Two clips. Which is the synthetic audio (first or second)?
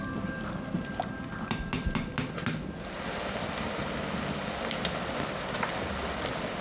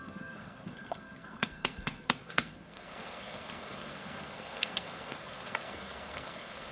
second